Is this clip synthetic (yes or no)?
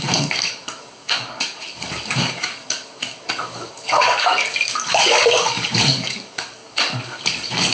yes